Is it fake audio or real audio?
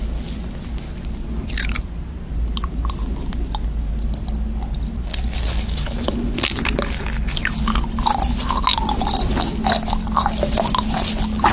real